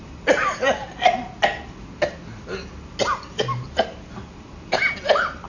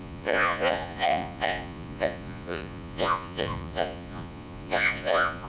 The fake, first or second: second